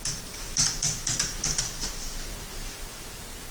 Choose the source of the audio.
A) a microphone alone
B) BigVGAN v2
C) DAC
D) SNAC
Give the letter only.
A